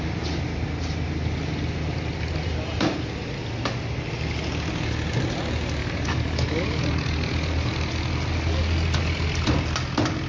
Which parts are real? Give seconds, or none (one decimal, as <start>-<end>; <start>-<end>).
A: 0.0-5.8; 6.8-10.3

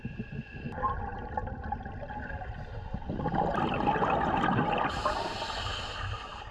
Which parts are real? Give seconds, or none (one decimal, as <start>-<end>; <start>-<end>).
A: 0.0-6.5

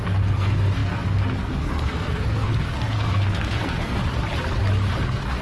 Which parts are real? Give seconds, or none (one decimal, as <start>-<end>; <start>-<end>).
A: 4.0-5.0

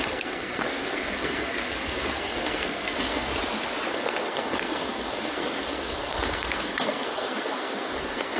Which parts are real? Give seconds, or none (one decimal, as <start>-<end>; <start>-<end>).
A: 3.3-3.9

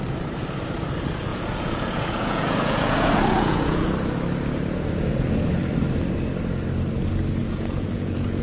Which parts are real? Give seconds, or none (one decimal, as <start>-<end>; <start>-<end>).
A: 0.0-1.3; 3.9-7.4

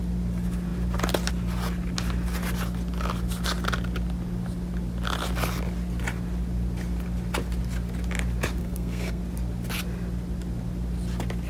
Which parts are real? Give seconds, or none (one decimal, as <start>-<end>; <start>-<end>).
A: 0.0-8.6; 9.2-11.5